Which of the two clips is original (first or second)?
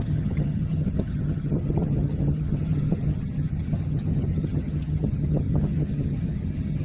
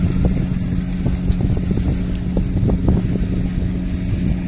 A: second